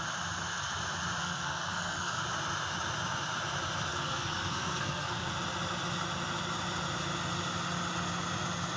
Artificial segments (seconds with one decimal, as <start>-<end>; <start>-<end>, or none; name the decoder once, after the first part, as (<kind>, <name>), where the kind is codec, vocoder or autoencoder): 1.2-2.2 (codec, SNAC); 3.9-5.3